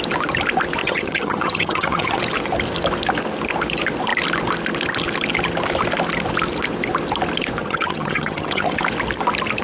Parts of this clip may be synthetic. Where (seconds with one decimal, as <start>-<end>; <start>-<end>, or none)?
0.8-2.2; 7.6-8.8